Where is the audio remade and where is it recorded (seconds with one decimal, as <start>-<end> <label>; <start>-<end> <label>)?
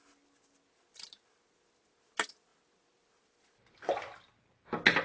0.0-5.0 recorded